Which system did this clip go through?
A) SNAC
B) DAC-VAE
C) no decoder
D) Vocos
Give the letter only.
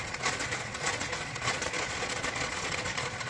D